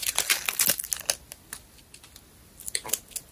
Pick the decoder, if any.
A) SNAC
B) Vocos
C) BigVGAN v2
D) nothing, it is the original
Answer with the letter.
D